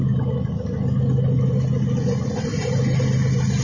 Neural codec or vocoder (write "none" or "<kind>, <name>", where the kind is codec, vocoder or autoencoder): none